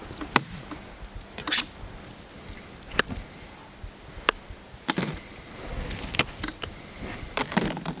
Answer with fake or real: real